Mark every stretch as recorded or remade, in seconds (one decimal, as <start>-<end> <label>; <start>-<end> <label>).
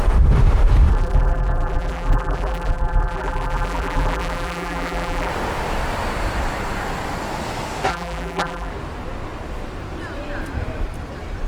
0.0-0.9 recorded; 0.9-5.3 remade; 5.3-7.9 recorded; 7.9-8.7 remade; 8.7-11.5 recorded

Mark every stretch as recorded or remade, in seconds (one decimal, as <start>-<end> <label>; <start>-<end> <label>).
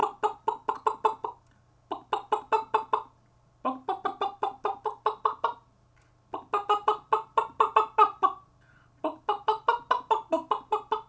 0.0-11.1 recorded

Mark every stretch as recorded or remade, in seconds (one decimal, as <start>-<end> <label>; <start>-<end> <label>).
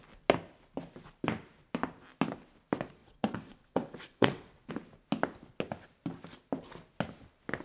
0.0-3.0 recorded; 3.0-4.7 remade; 4.7-7.6 recorded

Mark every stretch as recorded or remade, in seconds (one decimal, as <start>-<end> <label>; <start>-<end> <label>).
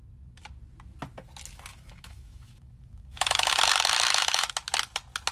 0.0-1.7 recorded; 1.7-4.5 remade; 4.5-5.3 recorded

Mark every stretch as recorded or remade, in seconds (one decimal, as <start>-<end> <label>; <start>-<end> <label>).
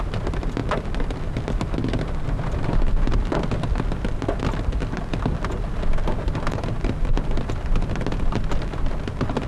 0.0-9.5 recorded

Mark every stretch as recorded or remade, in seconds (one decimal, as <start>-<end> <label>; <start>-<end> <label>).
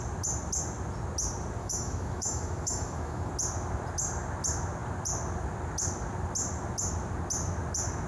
0.0-1.6 recorded; 1.6-3.3 remade; 3.3-8.1 recorded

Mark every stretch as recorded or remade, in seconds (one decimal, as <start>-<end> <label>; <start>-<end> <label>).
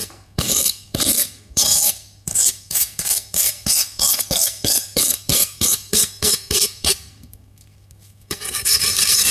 0.0-9.3 remade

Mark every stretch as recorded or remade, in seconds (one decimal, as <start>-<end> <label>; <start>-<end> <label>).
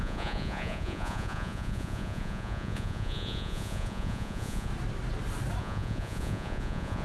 0.0-4.7 remade; 4.7-5.6 recorded; 5.6-7.0 remade